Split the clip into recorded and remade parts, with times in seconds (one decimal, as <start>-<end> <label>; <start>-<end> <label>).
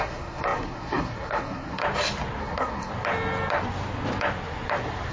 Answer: 0.0-1.8 remade; 1.8-2.4 recorded; 2.4-2.9 remade; 2.9-5.1 recorded